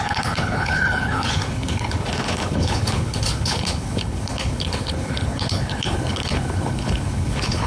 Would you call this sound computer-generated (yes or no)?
yes